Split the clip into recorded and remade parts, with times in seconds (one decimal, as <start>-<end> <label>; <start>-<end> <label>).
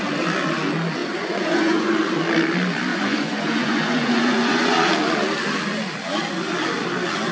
0.0-1.0 recorded; 1.0-1.9 remade; 1.9-2.9 recorded; 2.9-4.9 remade; 4.9-7.3 recorded